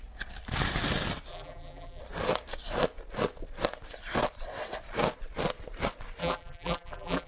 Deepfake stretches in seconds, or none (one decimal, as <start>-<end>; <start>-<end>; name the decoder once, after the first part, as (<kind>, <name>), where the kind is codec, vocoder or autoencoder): 1.3-2.0 (vocoder, BigVGAN v2); 6.2-7.3